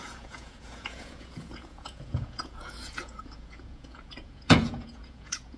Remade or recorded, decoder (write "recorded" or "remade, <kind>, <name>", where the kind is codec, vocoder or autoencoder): remade, vocoder, Vocos